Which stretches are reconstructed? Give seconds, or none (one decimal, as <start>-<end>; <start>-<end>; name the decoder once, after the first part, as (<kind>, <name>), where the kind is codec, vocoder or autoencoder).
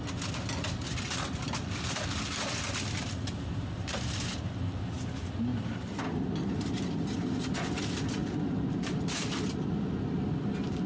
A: none